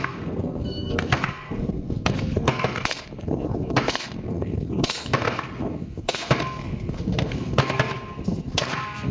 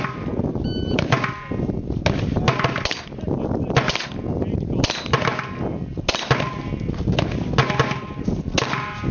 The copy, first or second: first